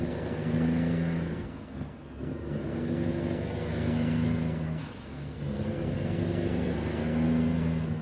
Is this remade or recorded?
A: remade